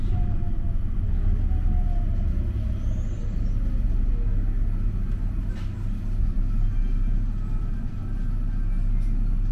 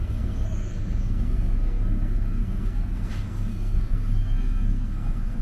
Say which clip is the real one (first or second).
first